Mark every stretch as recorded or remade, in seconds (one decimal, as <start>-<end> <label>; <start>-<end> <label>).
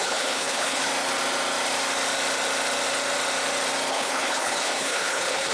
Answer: 0.0-0.9 remade; 0.9-3.9 recorded; 3.9-5.5 remade